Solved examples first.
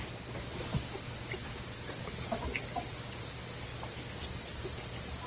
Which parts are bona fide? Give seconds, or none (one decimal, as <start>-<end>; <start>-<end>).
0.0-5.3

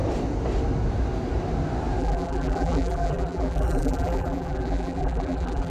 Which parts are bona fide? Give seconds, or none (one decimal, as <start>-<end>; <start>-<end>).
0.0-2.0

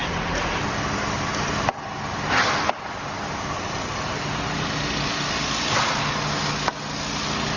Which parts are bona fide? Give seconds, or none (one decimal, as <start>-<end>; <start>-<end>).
0.0-7.6